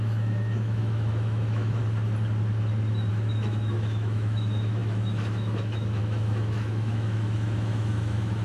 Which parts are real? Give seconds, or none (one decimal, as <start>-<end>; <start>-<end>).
1.8-3.1